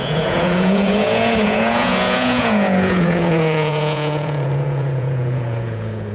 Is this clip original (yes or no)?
no